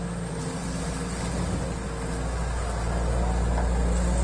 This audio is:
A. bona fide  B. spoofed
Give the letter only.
A